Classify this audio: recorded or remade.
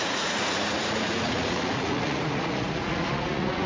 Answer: remade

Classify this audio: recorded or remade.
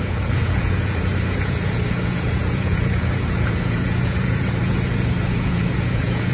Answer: remade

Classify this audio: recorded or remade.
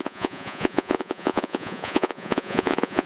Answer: remade